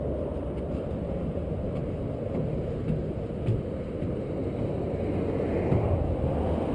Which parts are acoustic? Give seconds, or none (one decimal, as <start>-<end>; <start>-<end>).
0.0-6.7